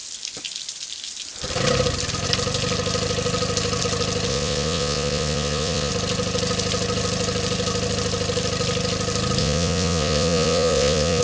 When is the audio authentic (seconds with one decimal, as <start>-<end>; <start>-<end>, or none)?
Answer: 0.0-4.3; 5.9-9.4